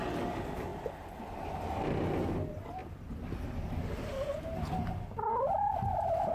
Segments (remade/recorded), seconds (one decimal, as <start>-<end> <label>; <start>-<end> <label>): 0.0-6.3 recorded